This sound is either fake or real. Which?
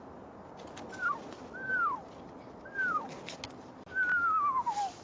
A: real